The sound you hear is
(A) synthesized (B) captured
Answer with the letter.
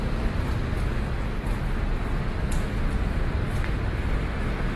B